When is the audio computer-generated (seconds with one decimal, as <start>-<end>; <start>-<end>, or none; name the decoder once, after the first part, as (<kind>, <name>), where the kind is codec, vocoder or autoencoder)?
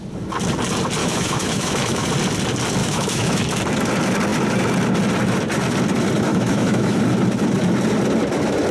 1.0-2.1 (autoencoder, DAC-VAE); 2.8-3.4; 6.3-7.0